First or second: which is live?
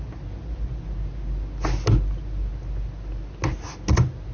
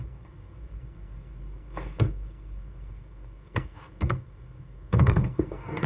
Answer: first